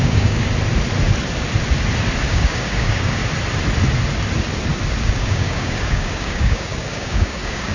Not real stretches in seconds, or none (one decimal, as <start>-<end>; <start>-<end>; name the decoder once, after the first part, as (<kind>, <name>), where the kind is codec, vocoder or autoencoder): 0.0-0.5 (codec, DAC); 2.3-3.2; 5.0-7.7